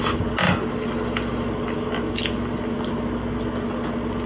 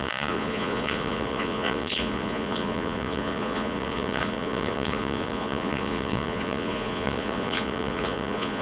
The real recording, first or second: first